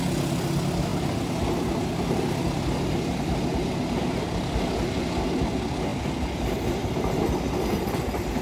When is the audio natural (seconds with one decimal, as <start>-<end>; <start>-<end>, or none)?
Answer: 0.0-8.4